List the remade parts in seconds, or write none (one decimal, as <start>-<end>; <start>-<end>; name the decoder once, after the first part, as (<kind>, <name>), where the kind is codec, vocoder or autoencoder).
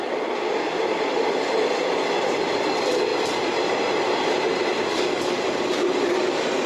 0.0-3.1 (vocoder, BigVGAN v2); 5.2-6.7